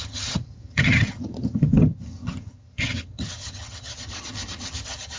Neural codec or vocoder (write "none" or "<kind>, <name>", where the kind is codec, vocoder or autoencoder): vocoder, HiFi-GAN